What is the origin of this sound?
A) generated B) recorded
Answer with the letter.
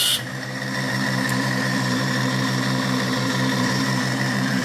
A